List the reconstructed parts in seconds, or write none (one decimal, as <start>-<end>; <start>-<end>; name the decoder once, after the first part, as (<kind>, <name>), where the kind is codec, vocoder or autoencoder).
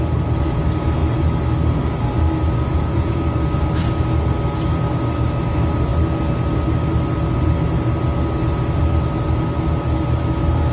2.7-3.2 (vocoder, Vocos)